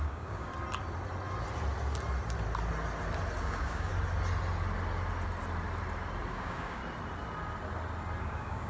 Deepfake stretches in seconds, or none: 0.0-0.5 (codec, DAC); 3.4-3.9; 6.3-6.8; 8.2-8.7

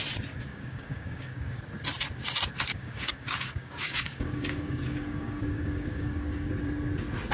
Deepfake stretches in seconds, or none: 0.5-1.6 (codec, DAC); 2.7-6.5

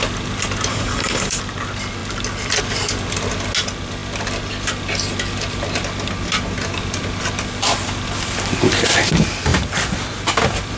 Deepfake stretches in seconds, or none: 0.7-1.4 (codec, DAC)

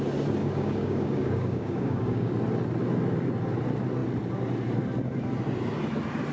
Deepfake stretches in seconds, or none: 0.4-2.3 (codec, DAC)

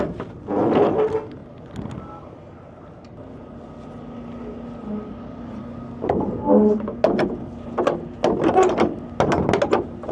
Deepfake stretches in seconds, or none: none

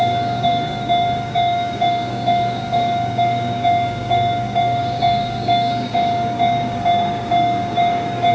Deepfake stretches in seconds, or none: 0.0-8.3 (codec, DAC)